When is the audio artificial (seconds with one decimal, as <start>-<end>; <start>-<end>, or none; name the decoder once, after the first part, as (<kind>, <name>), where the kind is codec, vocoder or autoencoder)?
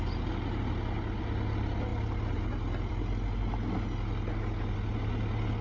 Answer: none